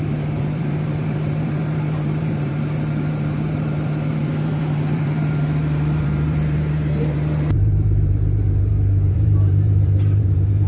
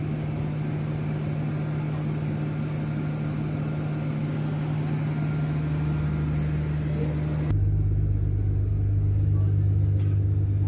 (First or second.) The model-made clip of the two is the first